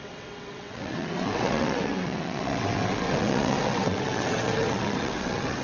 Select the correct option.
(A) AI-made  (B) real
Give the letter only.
A